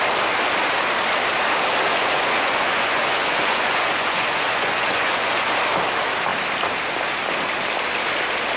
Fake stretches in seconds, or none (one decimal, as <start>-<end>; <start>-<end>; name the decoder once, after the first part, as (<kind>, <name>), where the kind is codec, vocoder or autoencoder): 1.9-5.5 (vocoder, Vocos)